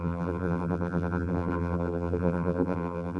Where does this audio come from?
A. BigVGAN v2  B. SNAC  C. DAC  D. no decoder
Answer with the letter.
A